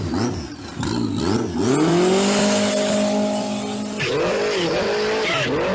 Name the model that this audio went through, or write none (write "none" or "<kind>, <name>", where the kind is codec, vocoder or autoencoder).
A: none